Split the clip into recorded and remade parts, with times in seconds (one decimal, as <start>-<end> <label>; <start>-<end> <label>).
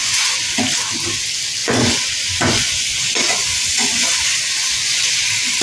0.0-0.5 remade; 0.5-1.6 recorded; 1.6-5.0 remade; 5.0-5.6 recorded